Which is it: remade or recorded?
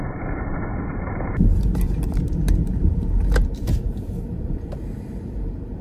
remade